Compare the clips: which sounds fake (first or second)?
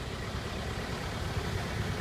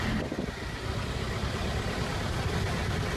second